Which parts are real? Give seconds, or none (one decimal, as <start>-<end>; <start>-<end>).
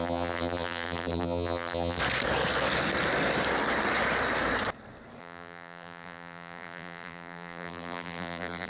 2.0-5.2